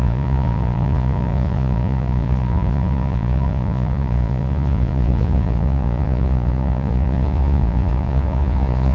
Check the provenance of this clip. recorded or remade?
remade